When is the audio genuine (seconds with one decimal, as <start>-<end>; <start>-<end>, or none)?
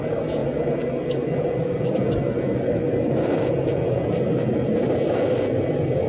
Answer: 0.0-6.1